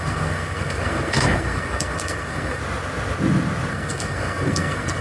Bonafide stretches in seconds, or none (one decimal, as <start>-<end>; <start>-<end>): 2.6-3.7